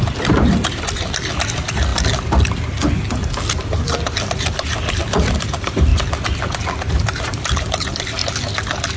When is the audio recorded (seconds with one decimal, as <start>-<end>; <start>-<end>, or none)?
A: 1.9-3.5; 5.9-7.2; 8.2-9.0